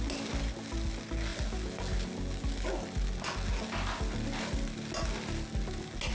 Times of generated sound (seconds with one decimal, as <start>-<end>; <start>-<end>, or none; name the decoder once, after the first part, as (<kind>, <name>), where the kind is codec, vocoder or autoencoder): none